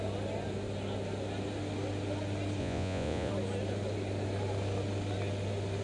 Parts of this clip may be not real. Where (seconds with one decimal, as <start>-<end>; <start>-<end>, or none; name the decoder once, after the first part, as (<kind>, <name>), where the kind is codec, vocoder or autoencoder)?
2.6-3.3 (vocoder, Vocos)

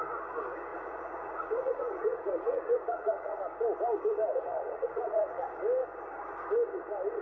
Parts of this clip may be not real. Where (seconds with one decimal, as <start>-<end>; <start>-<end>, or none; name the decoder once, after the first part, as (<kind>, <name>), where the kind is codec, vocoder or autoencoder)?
0.7-3.4 (vocoder, Vocos); 4.3-5.4

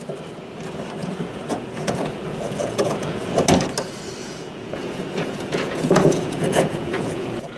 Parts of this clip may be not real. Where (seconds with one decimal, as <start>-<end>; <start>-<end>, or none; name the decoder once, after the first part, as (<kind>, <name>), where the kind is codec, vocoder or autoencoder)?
1.0-3.3 (vocoder, Vocos); 4.2-7.6

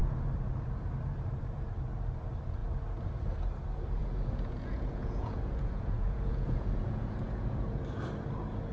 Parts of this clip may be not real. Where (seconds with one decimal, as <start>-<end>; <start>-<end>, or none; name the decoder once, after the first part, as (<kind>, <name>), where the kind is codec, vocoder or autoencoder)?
4.0-7.8 (vocoder, Vocos)

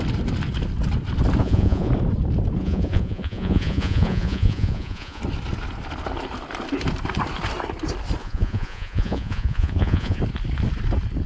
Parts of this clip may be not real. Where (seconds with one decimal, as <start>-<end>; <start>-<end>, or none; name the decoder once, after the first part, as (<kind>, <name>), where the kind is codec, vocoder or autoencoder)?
1.4-1.9 (vocoder, Vocos); 2.6-5.2; 8.2-10.2